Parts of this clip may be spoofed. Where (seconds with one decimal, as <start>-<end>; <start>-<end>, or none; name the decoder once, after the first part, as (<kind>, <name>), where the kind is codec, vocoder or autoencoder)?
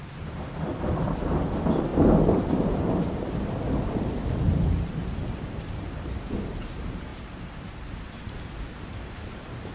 0.0-9.7 (vocoder, BigVGAN v2)